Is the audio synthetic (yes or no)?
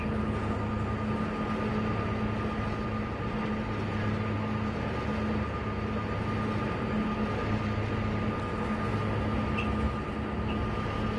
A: no